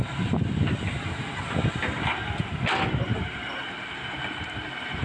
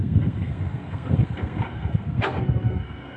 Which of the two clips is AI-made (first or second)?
second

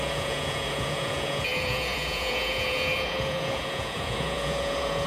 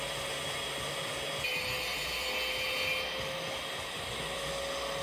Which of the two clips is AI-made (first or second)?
first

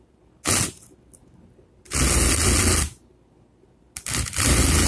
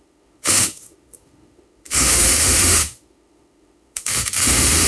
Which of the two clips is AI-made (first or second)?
second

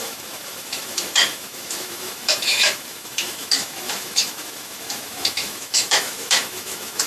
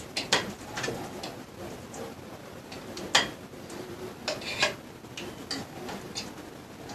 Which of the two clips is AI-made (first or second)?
first